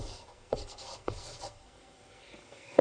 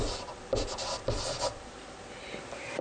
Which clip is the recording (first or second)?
second